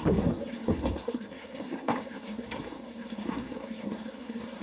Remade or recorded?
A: remade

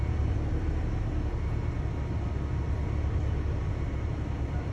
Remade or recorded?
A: recorded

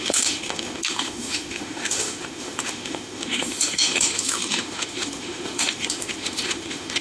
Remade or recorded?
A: remade